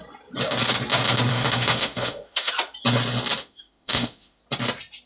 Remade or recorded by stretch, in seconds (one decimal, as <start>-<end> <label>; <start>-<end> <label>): 0.0-1.3 recorded; 1.3-2.5 remade; 2.5-3.4 recorded; 3.4-4.4 remade; 4.4-5.1 recorded